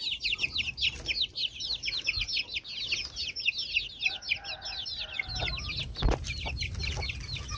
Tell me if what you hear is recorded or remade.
recorded